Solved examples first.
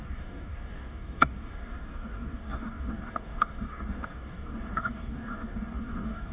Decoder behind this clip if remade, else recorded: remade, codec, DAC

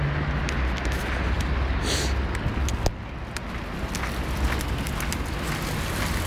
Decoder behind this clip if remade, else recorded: recorded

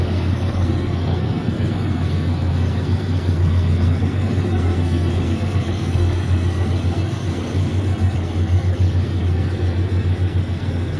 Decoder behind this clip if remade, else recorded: remade, codec, SNAC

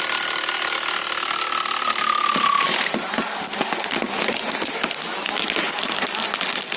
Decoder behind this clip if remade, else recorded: recorded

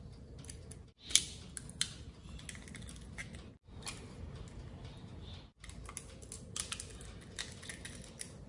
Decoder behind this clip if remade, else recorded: recorded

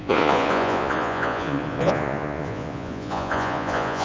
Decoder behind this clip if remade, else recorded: remade, vocoder, Vocos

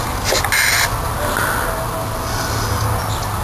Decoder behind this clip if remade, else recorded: recorded